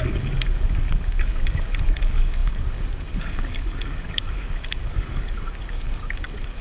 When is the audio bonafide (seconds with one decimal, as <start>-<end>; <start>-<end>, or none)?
none